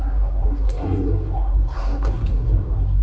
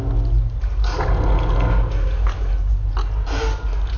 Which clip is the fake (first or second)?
first